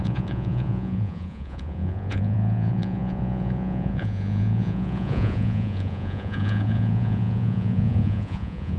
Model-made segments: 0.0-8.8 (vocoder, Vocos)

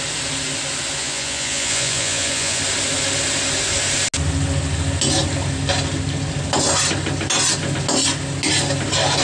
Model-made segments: 1.0-2.6 (vocoder, Vocos)

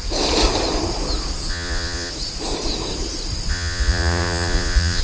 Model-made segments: 1.5-2.1 (vocoder, Vocos); 3.5-5.0

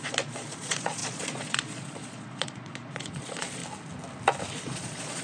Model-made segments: 0.0-3.6 (vocoder, Vocos); 4.5-5.2

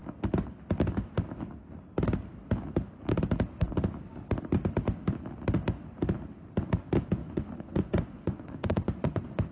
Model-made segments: 7.2-9.5 (vocoder, Vocos)

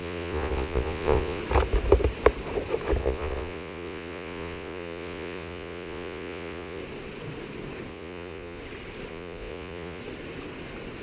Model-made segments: 0.0-1.4 (vocoder, Vocos); 3.0-6.8; 7.9-8.6; 9.1-10.0

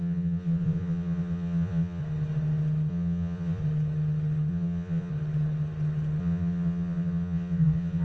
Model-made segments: 0.0-2.0 (vocoder, Vocos); 2.9-3.6; 4.5-5.1; 6.2-8.0

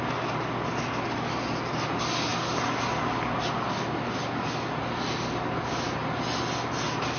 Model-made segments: none